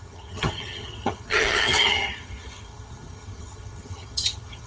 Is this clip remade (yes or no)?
yes